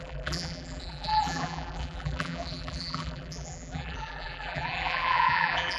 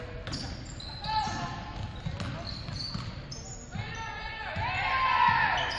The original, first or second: second